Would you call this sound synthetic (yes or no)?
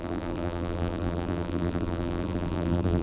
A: yes